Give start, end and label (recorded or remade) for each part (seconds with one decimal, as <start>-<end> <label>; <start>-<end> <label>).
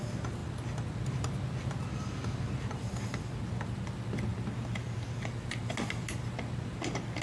0.0-7.2 recorded